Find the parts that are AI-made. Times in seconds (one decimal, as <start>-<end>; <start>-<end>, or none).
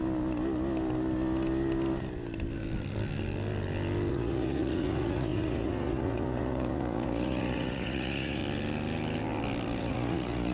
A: 4.1-8.4; 9.8-10.5